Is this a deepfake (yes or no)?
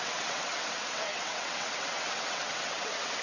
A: yes